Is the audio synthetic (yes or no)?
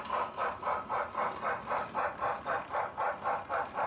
no